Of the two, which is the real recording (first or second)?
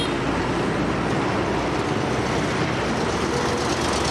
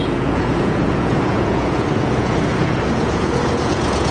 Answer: first